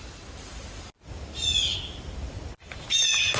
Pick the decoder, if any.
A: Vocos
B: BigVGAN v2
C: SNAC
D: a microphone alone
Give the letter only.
D